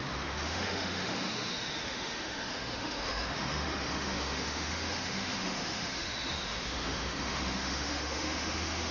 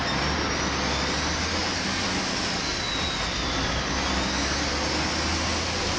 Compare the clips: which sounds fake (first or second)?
first